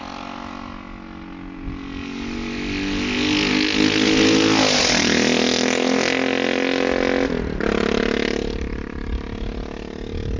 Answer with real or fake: real